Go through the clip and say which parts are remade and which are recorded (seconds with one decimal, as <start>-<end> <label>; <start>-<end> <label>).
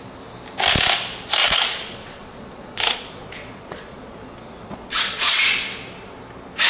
0.0-1.4 recorded; 1.4-5.4 remade; 5.4-6.7 recorded